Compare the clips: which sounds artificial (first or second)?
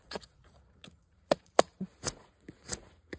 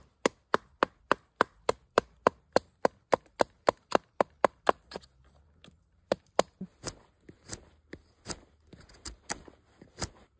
first